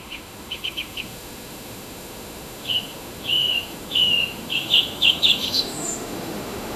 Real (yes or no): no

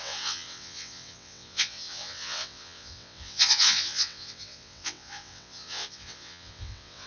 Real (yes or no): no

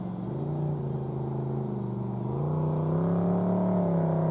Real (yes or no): yes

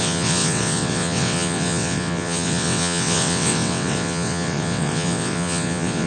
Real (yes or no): no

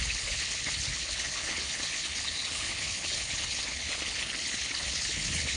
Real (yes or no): no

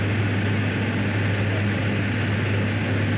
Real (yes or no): yes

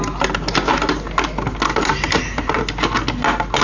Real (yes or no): yes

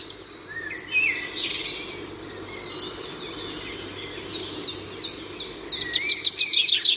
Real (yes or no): yes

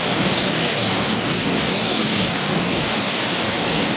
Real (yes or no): no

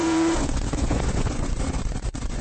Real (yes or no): no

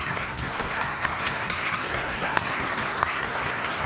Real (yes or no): no